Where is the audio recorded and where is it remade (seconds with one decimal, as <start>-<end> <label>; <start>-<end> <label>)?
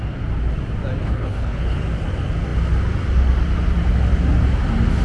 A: 0.0-1.0 recorded; 1.0-1.8 remade; 1.8-5.0 recorded